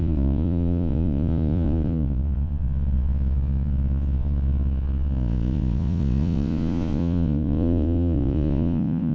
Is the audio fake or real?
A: fake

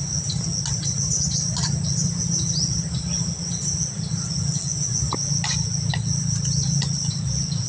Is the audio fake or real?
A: real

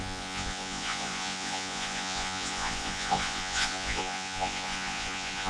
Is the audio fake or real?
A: fake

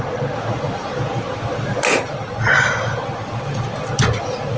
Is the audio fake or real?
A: real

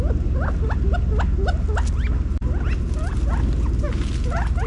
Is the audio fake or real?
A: real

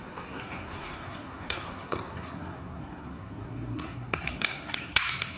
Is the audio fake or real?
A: fake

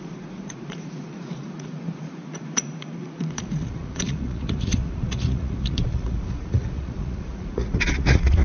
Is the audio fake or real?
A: fake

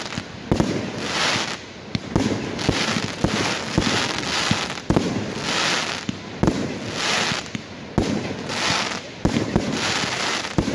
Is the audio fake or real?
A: real